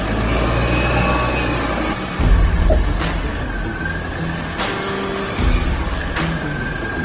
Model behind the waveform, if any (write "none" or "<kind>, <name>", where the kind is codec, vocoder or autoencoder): none